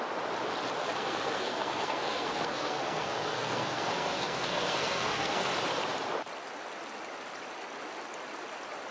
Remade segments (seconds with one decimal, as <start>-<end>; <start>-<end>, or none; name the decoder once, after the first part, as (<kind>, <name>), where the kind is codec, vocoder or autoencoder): 0.8-5.5 (codec, SNAC)